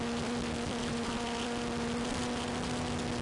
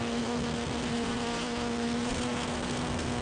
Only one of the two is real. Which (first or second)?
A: first